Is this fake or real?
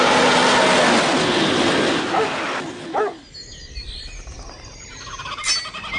real